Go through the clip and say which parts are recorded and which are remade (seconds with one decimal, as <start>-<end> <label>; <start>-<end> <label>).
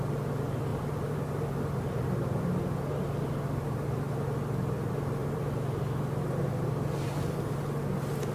0.0-0.7 recorded; 0.7-2.9 remade; 2.9-5.2 recorded; 5.2-6.5 remade; 6.5-8.3 recorded